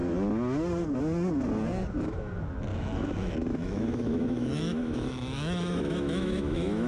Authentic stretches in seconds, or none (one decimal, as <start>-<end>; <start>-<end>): 0.0-2.7